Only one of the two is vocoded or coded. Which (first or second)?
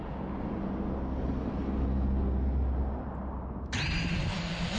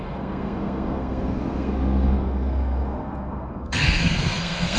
second